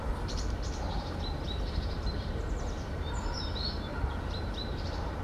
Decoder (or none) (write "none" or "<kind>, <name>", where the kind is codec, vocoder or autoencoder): vocoder, BigVGAN v2